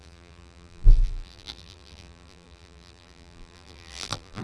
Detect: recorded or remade remade